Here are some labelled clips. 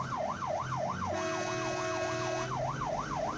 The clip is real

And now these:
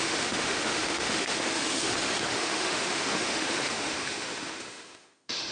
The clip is fake